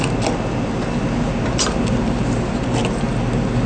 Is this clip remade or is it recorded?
recorded